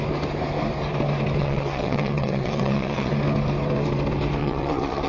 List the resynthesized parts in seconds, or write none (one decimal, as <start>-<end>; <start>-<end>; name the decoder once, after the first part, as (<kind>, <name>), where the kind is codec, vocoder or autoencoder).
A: 1.4-3.1 (vocoder, WaveNeXt); 4.4-5.1